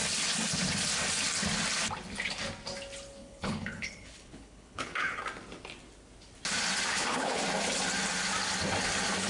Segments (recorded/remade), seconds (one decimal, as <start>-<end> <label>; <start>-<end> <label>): 0.0-3.2 recorded; 3.2-5.2 remade; 5.2-6.9 recorded; 6.9-7.4 remade; 7.4-9.3 recorded